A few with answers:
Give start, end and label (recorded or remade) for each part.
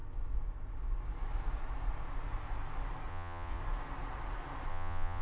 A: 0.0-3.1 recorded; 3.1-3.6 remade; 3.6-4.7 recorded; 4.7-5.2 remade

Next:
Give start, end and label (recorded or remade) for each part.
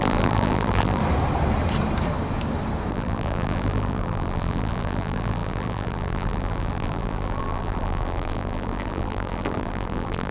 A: 0.0-1.0 remade; 1.0-2.9 recorded; 2.9-10.3 remade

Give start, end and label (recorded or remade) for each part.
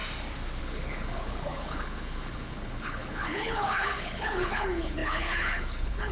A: 0.0-0.6 recorded; 0.6-6.1 remade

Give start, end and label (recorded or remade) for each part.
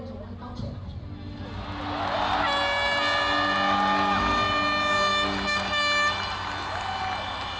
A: 0.0-7.6 recorded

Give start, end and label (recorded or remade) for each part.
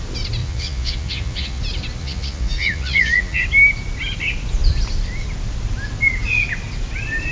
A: 0.0-0.4 recorded; 0.4-1.6 remade; 1.6-2.0 recorded; 2.0-3.4 remade; 3.4-7.3 recorded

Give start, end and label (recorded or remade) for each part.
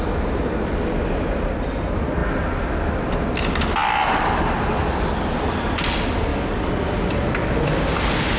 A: 0.0-6.3 recorded; 6.3-6.8 remade; 6.8-8.4 recorded